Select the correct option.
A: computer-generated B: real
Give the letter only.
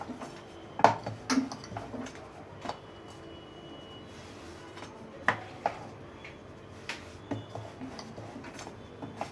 B